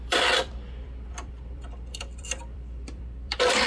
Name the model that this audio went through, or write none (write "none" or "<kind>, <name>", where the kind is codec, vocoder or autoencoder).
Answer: vocoder, BigVGAN v2